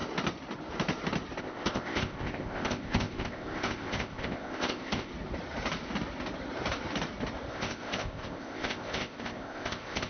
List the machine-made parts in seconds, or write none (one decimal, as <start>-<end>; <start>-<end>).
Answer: 1.4-5.1; 7.5-10.1